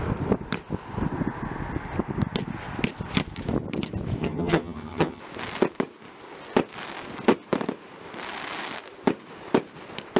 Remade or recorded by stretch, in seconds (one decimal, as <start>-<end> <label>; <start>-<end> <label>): 0.0-4.2 recorded; 4.2-5.2 remade; 5.2-10.2 recorded